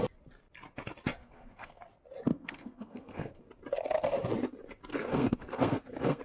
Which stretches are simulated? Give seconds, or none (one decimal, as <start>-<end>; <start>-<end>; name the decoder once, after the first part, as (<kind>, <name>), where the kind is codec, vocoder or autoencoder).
1.2-1.8 (codec, SNAC); 2.3-3.4; 4.9-6.2